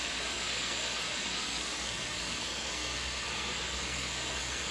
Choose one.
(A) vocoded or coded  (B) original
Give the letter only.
A